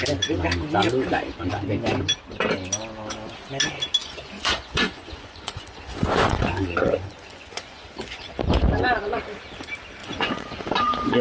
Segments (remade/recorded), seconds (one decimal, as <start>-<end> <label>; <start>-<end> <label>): 0.0-4.0 recorded; 4.0-8.3 remade; 8.3-10.0 recorded; 10.0-11.2 remade